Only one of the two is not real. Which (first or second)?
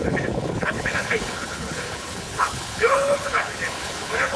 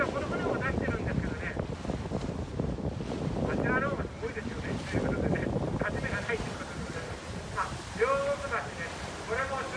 first